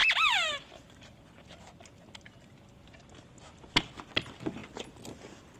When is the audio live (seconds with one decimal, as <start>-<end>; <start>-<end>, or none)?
0.0-5.6